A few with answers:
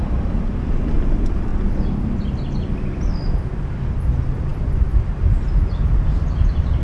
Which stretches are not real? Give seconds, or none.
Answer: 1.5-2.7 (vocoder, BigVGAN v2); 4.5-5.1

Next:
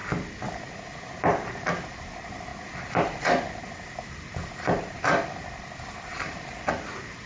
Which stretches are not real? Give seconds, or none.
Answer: 1.7-2.5 (vocoder, BigVGAN v2); 3.6-7.3

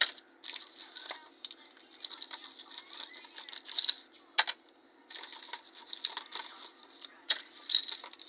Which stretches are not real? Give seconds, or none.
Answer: none

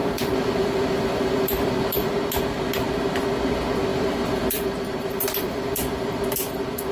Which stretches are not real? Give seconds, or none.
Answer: 0.0-2.1 (vocoder, BigVGAN v2); 3.9-6.9